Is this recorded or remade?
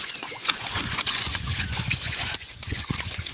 remade